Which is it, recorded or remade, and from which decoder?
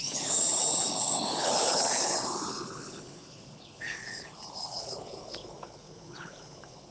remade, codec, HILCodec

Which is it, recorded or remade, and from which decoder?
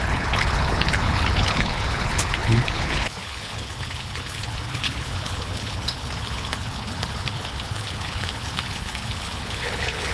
remade, codec, HILCodec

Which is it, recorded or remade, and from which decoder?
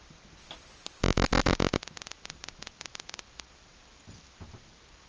recorded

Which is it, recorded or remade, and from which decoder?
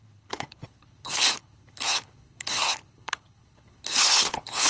remade, codec, HILCodec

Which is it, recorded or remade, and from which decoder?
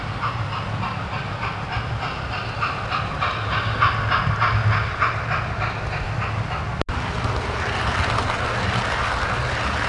recorded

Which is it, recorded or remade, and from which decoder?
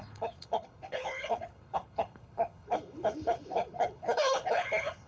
remade, codec, HILCodec